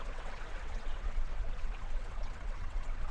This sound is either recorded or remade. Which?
remade